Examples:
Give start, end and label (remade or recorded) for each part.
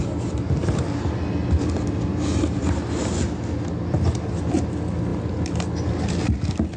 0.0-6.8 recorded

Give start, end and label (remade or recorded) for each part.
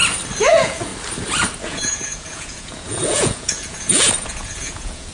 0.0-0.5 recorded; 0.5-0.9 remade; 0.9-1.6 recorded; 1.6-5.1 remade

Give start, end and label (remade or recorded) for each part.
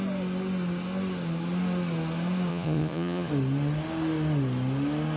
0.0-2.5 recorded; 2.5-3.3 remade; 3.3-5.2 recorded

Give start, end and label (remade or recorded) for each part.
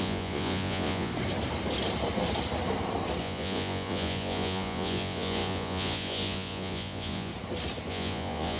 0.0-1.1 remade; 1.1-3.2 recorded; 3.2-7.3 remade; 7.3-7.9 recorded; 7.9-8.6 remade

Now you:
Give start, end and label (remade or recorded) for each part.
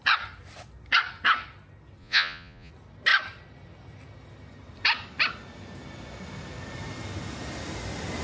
0.0-2.0 recorded; 2.0-2.7 remade; 2.7-8.2 recorded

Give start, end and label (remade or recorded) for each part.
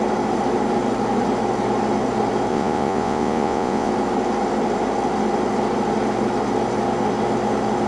0.0-2.5 recorded; 2.5-3.9 remade; 3.9-7.9 recorded